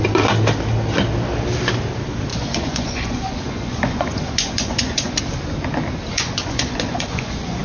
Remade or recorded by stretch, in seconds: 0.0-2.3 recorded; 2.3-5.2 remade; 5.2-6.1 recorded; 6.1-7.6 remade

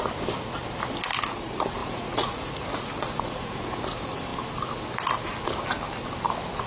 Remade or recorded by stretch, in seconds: 0.0-1.8 recorded; 1.8-3.8 remade; 3.8-6.7 recorded

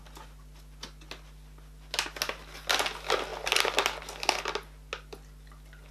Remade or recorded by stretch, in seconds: 0.0-5.9 recorded

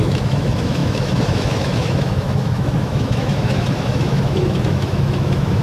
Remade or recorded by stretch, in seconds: 0.0-5.6 remade

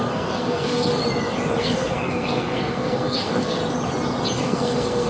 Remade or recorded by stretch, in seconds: 0.0-1.0 remade; 1.0-1.6 recorded; 1.6-3.6 remade; 3.6-4.4 recorded; 4.4-5.1 remade